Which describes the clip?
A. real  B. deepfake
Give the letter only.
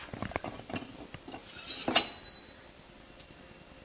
A